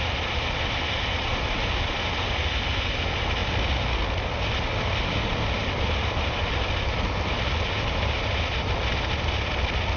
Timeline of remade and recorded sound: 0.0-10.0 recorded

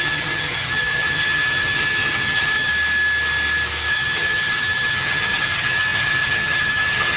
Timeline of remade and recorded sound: 0.0-2.7 remade; 2.7-3.9 recorded; 3.9-7.2 remade